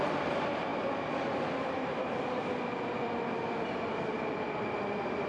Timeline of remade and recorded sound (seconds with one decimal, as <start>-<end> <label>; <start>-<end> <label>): 0.0-5.3 recorded